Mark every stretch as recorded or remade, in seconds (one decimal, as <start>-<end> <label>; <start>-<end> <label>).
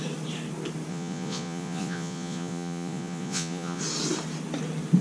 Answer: 0.0-0.9 recorded; 0.9-3.8 remade; 3.8-5.0 recorded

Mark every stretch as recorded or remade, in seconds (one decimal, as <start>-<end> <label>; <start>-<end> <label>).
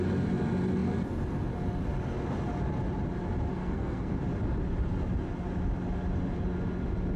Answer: 0.0-3.5 recorded; 3.5-4.2 remade; 4.2-7.2 recorded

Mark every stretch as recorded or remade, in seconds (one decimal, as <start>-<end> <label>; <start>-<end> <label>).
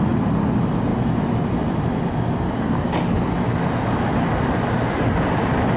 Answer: 0.0-0.9 recorded; 0.9-1.8 remade; 1.8-4.1 recorded; 4.1-4.7 remade; 4.7-5.8 recorded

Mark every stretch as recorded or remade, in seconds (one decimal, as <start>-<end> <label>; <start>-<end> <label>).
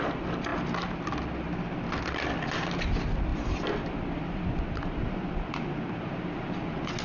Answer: 0.0-3.3 recorded; 3.3-5.9 remade; 5.9-7.0 recorded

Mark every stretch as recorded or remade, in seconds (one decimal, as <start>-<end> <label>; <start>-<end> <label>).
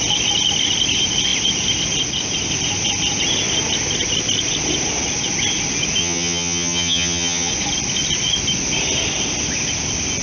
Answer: 0.0-6.0 recorded; 6.0-7.5 remade; 7.5-10.2 recorded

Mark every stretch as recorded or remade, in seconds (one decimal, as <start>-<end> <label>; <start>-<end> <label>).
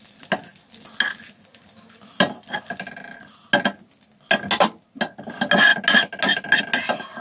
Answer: 0.0-7.2 recorded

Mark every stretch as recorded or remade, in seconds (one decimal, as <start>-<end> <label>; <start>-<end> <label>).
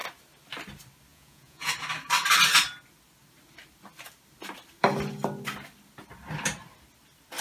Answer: 0.0-1.1 recorded; 1.1-1.7 remade; 1.7-7.4 recorded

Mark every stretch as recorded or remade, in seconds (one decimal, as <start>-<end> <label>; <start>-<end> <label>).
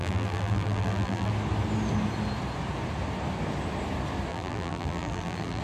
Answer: 0.0-1.3 remade; 1.3-4.3 recorded; 4.3-5.6 remade